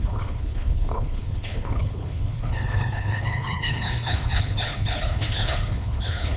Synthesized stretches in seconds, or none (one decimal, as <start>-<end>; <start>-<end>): 0.0-6.4